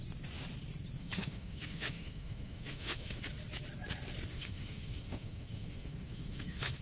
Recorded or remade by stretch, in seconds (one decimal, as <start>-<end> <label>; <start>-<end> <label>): 0.0-1.0 recorded; 1.0-3.2 remade; 3.2-4.3 recorded; 4.3-6.8 remade